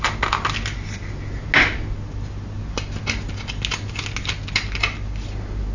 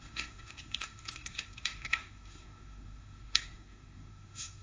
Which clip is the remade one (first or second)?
second